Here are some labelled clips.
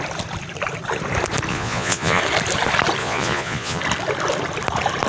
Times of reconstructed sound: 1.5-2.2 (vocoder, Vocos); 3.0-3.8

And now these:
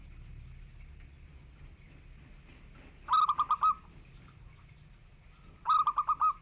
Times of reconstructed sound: none

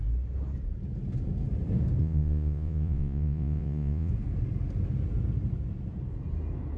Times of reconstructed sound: 2.0-4.1 (vocoder, Vocos)

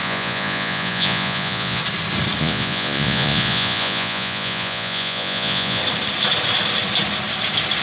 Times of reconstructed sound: 0.0-1.8 (vocoder, Vocos); 2.4-5.8

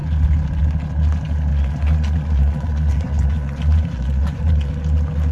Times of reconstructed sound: 1.5-4.7 (vocoder, Vocos)